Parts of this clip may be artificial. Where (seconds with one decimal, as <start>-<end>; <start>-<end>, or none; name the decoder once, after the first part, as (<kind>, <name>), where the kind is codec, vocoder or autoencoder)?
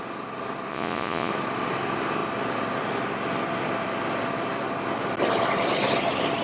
0.7-1.3 (vocoder, Vocos)